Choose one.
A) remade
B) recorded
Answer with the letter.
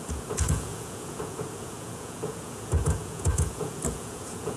A